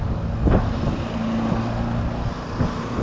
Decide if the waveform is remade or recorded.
recorded